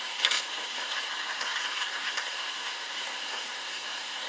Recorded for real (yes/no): no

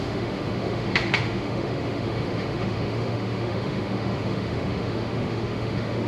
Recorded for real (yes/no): no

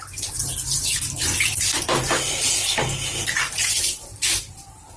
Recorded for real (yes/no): no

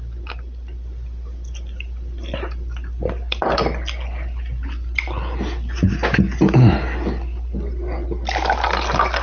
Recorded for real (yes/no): yes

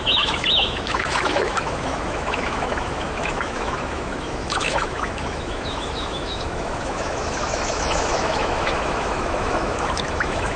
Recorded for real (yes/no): no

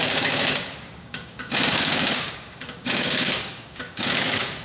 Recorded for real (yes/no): no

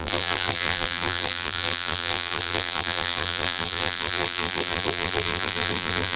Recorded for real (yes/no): no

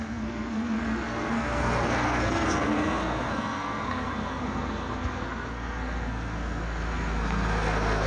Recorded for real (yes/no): no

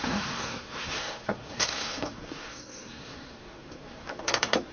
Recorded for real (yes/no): no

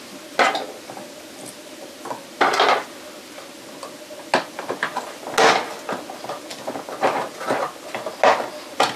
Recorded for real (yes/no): yes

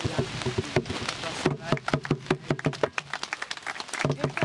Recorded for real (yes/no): yes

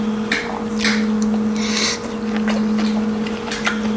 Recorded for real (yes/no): yes